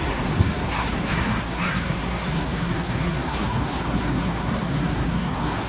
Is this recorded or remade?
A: remade